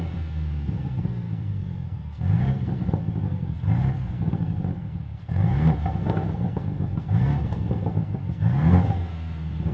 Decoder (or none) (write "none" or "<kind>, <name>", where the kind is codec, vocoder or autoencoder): codec, SNAC